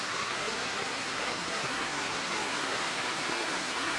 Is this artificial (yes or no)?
yes